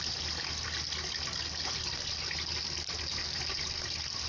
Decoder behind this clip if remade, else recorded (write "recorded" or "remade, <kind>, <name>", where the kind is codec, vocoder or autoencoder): recorded